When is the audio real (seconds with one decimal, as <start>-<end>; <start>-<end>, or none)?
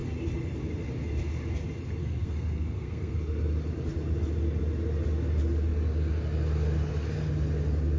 0.0-2.0; 3.1-8.0